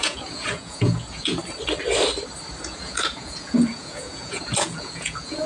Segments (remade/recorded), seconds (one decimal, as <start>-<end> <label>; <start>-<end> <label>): 0.0-1.4 remade; 1.4-2.6 recorded; 2.6-5.5 remade